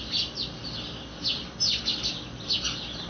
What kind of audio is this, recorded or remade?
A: recorded